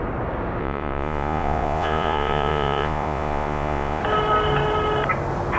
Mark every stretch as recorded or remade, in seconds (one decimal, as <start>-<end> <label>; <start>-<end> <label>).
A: 0.0-0.6 recorded; 0.6-4.0 remade; 4.0-5.6 recorded